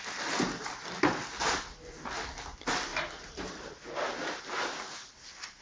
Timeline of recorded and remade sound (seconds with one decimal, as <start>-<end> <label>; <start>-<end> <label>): 0.0-5.6 recorded

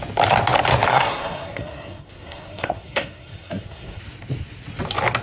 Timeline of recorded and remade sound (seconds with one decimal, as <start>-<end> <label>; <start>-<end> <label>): 0.0-0.9 recorded; 0.9-4.0 remade; 4.0-5.2 recorded

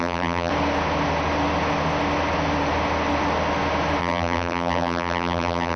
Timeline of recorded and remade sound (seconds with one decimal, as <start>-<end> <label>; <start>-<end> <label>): 0.0-0.5 remade; 0.5-4.0 recorded; 4.0-5.8 remade

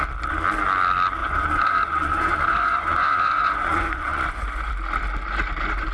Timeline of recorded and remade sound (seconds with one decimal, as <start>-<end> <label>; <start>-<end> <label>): 0.0-1.2 recorded; 1.2-4.7 remade; 4.7-5.9 recorded

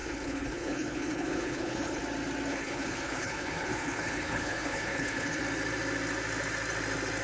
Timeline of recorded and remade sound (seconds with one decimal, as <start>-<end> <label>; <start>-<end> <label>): 0.0-2.0 remade; 2.0-2.5 recorded; 2.5-5.4 remade; 5.4-7.2 recorded

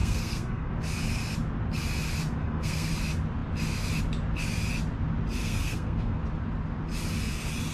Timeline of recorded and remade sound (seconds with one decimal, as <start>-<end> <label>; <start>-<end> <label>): 0.0-0.7 remade; 0.7-2.4 recorded; 2.4-2.9 remade; 2.9-5.4 recorded; 5.4-6.2 remade; 6.2-7.7 recorded